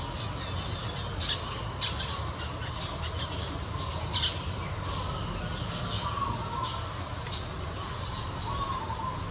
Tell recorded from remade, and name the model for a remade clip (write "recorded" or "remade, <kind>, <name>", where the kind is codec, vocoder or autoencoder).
recorded